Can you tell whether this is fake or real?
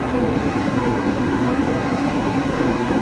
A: fake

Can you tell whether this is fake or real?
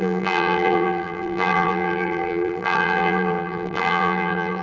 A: fake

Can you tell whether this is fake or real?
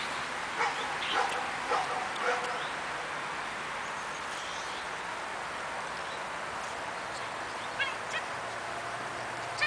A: real